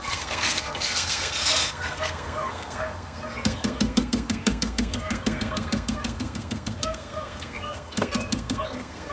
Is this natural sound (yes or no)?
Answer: no